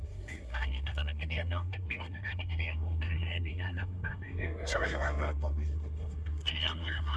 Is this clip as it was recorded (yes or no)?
no